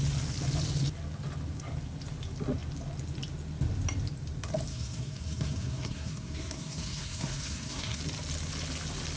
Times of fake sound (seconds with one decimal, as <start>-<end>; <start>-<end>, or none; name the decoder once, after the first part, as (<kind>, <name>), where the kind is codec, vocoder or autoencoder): 4.7-8.0 (codec, SNAC)